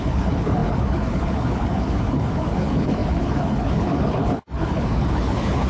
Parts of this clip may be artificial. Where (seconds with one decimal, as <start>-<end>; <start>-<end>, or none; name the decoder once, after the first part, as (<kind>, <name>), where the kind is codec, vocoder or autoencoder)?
0.0-5.7 (codec, HILCodec)